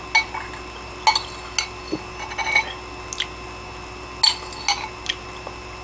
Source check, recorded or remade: recorded